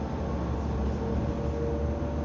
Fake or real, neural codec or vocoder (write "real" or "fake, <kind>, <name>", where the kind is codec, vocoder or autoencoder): real